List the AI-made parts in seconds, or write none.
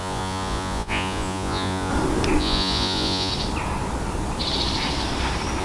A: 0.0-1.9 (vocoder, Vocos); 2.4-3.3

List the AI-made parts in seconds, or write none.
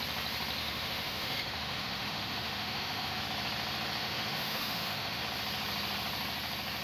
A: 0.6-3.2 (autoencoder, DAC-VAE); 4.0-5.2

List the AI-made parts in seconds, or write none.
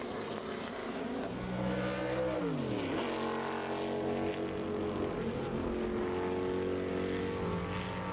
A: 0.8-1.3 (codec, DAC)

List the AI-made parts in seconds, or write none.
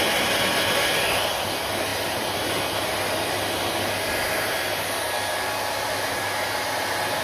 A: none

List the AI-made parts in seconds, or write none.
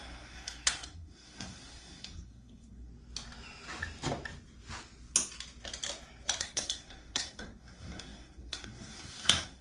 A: 0.0-2.9 (codec, SNAC); 6.4-9.6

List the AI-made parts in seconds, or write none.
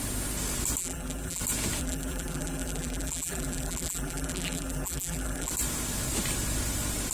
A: 0.8-1.4 (vocoder, BigVGAN v2); 1.8-5.5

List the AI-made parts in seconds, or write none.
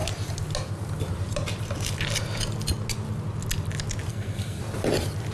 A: 4.1-4.6 (codec, SNAC)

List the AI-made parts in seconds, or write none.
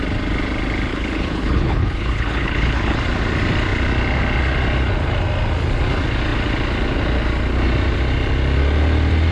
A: 0.9-3.0 (codec, HILCodec)